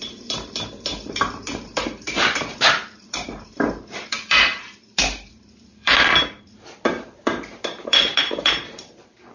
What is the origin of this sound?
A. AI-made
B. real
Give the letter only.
A